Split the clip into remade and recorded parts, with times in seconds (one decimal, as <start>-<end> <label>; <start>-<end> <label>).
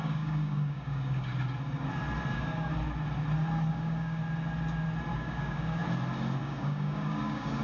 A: 0.0-1.3 remade; 1.3-2.3 recorded; 2.3-2.7 remade; 2.7-3.7 recorded; 3.7-4.2 remade; 4.2-5.1 recorded; 5.1-5.8 remade; 5.8-6.4 recorded; 6.4-7.6 remade